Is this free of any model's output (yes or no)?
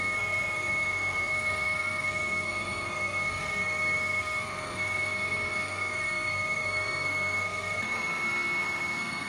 no